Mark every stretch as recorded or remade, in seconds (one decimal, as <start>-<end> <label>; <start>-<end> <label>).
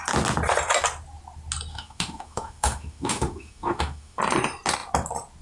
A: 0.0-1.7 recorded; 1.7-4.2 remade; 4.2-5.4 recorded